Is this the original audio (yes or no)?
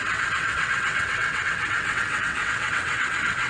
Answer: no